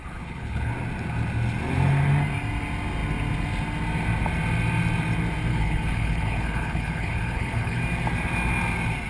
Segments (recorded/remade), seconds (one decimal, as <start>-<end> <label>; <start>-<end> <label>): 0.0-0.7 remade; 0.7-5.5 recorded; 5.5-7.8 remade; 7.8-9.1 recorded

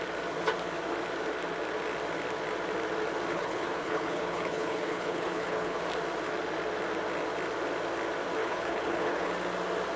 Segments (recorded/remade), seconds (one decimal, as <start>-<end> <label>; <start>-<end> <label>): 0.0-3.3 recorded; 3.3-5.8 remade; 5.8-8.4 recorded; 8.4-9.3 remade; 9.3-10.0 recorded

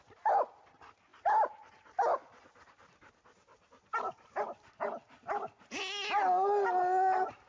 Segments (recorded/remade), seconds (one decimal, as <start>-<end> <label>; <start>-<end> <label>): 0.0-7.5 recorded

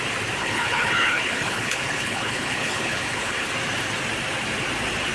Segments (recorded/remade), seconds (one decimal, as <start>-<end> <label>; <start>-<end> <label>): 0.0-0.4 recorded; 0.4-3.5 remade; 3.5-5.1 recorded